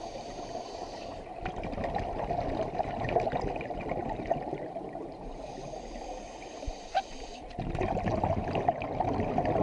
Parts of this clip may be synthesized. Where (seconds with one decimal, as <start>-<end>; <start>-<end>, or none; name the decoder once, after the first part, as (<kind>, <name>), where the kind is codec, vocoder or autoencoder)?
4.0-7.3 (vocoder, BigVGAN v2)